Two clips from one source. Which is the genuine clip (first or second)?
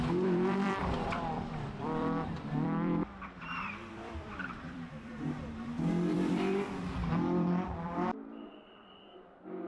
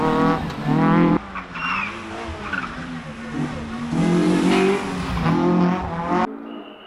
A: second